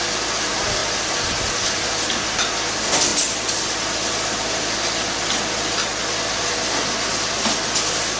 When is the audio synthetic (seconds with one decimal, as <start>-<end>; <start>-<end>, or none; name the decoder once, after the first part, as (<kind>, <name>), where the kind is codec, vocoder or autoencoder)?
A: none